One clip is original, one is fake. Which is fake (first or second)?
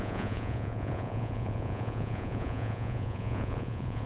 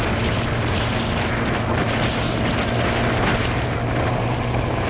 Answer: first